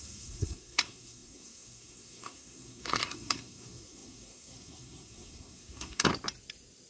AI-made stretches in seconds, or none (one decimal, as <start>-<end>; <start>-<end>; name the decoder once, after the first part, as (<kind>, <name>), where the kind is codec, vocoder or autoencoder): 0.0-6.1 (codec, SNAC)